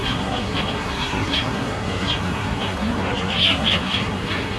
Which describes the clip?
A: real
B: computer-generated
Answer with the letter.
B